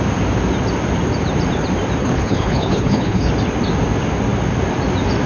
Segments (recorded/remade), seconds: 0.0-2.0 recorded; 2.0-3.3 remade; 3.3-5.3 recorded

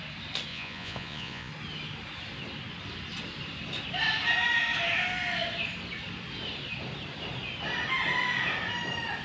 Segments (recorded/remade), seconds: 0.0-0.5 recorded; 0.5-1.5 remade; 1.5-9.2 recorded